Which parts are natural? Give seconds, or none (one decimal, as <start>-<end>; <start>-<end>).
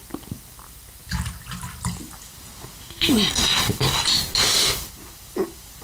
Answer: 0.0-1.0; 1.6-5.8